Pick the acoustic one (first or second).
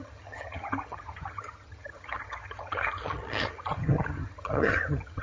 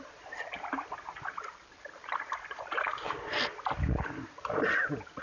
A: second